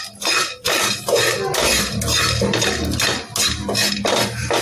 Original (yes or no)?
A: yes